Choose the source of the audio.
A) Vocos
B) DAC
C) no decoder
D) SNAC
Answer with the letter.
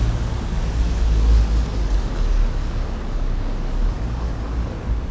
B